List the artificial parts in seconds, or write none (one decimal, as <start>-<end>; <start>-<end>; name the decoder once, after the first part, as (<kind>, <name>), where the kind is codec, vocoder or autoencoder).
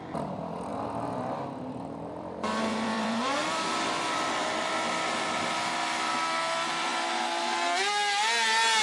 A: 0.0-6.9 (vocoder, BigVGAN v2)